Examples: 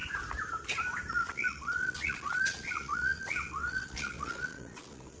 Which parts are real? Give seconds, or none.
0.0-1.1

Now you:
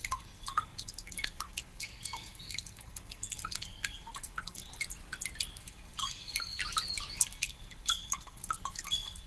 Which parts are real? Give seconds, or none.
4.7-5.6; 6.6-7.2

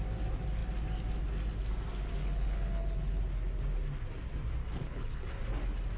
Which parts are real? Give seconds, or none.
0.0-2.2; 3.2-4.6; 5.4-6.0

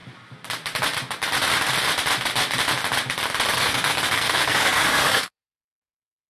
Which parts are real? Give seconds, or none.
0.0-3.6

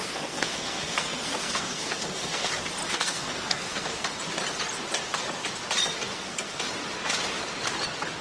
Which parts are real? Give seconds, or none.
2.5-2.9; 4.2-6.1; 6.6-8.2